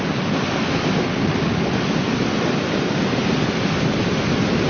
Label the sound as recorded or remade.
recorded